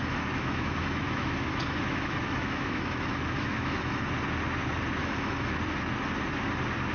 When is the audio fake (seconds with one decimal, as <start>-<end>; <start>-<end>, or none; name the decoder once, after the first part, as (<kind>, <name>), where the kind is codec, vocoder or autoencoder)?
0.0-4.1 (autoencoder, DAC-VAE); 5.0-5.5